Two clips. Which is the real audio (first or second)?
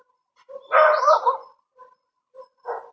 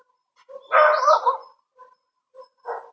second